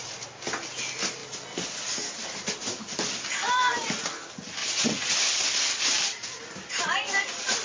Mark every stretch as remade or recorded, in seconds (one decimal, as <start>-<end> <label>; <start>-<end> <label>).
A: 0.0-4.6 recorded; 4.6-5.1 remade; 5.1-7.6 recorded